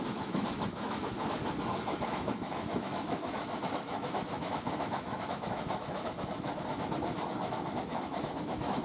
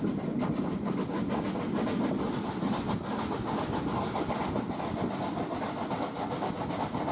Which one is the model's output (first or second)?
first